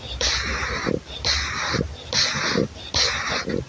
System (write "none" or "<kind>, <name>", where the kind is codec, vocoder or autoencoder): none